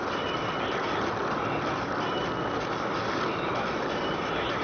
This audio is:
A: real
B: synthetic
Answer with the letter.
B